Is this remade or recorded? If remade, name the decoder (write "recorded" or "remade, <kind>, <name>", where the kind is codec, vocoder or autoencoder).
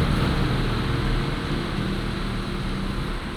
recorded